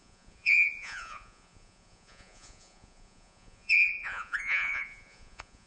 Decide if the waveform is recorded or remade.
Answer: remade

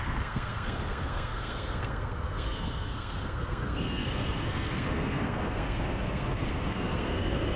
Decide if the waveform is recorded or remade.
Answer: remade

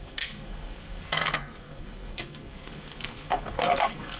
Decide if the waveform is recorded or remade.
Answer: remade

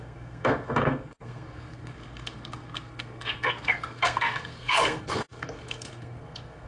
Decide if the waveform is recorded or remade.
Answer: remade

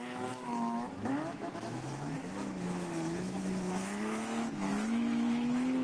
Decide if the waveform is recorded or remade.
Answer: remade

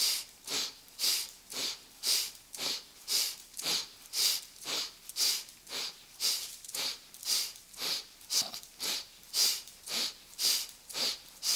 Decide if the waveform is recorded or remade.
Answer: remade